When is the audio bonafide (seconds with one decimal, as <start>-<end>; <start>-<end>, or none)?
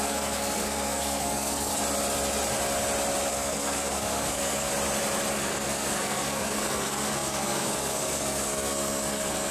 1.7-3.3; 4.7-5.3